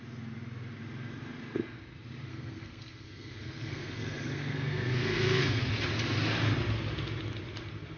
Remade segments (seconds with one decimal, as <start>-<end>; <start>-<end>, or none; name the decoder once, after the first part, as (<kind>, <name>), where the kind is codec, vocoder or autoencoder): 2.3-5.7 (codec, SNAC)